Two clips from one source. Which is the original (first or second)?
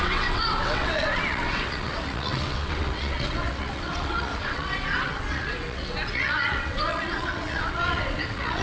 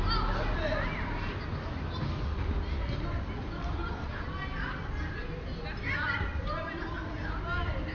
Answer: second